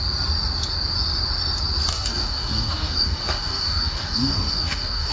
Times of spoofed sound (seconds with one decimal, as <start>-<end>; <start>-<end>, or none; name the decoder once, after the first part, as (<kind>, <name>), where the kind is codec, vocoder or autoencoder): 1.9-5.1 (codec, DAC)